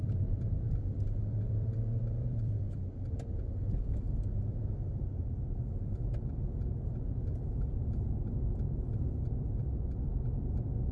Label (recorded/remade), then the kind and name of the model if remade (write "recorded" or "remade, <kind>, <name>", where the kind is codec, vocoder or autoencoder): remade, vocoder, BigVGAN v2